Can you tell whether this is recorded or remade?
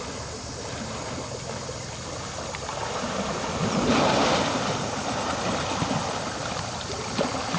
recorded